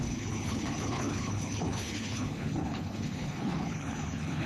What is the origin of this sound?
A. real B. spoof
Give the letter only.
B